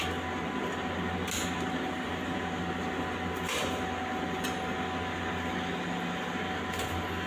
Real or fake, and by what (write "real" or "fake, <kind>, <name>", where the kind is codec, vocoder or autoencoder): real